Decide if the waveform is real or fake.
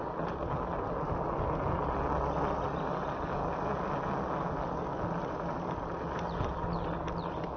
real